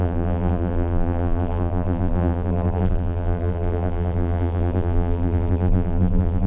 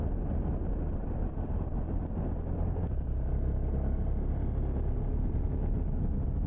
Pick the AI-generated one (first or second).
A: first